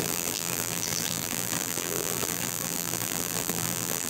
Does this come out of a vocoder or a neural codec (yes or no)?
yes